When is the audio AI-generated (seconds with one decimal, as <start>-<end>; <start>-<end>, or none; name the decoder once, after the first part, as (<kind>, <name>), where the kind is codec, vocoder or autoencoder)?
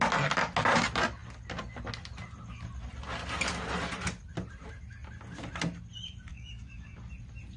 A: 6.3-7.0 (codec, DAC)